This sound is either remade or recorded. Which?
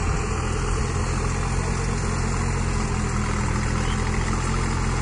recorded